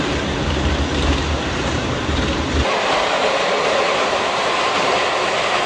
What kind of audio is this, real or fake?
fake